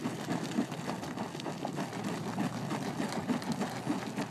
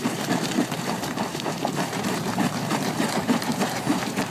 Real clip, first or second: first